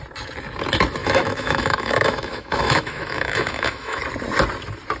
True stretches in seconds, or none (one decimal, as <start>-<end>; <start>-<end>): 0.0-1.0; 4.0-5.0

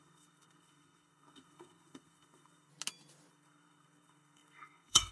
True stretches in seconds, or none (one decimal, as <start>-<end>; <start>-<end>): 2.7-3.3